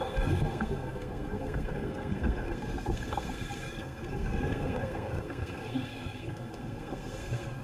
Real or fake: fake